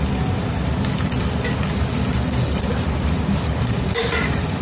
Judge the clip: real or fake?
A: fake